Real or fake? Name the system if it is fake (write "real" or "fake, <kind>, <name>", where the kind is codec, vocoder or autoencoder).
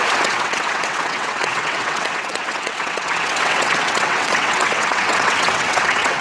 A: fake, vocoder, WaveNeXt